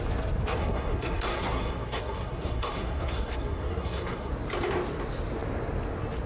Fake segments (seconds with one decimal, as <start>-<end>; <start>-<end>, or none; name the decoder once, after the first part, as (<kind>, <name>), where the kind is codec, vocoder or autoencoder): 0.6-4.3 (codec, SNAC)